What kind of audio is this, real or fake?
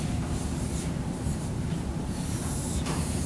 fake